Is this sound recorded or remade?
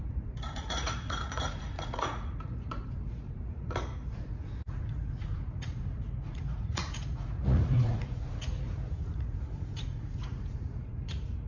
remade